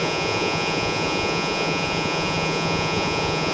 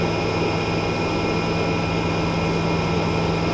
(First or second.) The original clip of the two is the second